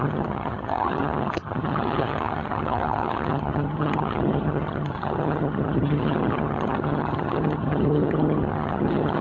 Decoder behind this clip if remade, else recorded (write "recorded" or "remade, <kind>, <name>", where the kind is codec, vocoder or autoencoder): remade, vocoder, HiFi-GAN